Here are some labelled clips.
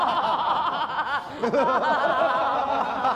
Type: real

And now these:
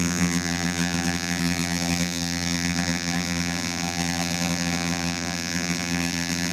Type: fake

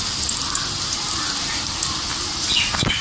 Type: real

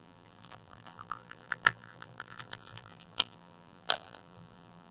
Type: fake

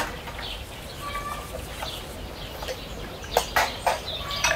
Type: real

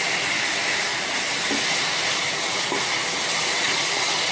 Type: real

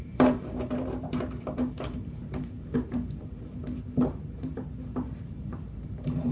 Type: fake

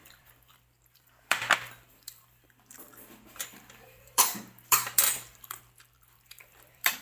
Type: fake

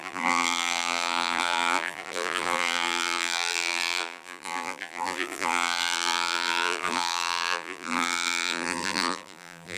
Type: fake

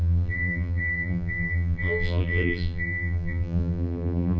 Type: fake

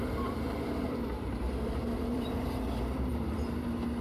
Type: fake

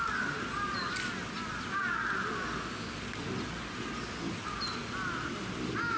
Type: real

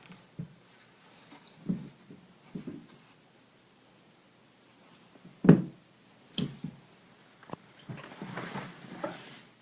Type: fake